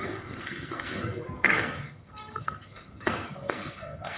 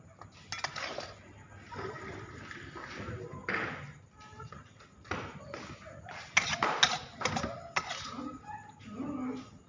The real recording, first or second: second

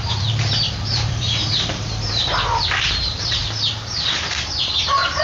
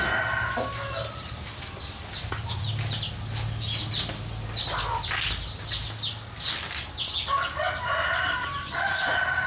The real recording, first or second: second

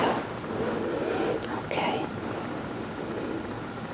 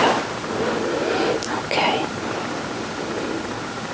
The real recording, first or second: first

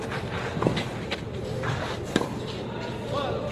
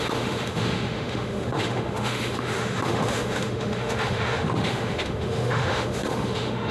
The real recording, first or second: first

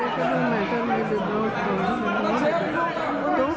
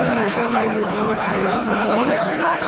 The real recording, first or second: first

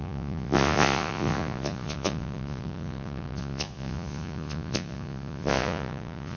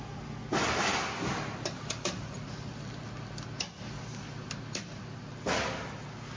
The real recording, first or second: second